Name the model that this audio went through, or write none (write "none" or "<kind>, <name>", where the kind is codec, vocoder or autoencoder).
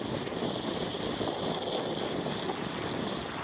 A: none